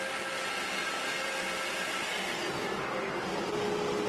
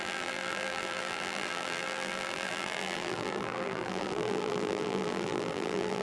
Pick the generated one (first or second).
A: second